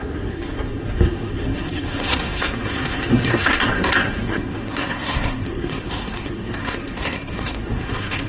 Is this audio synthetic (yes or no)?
yes